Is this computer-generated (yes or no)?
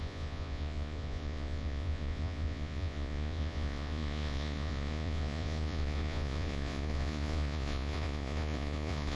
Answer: yes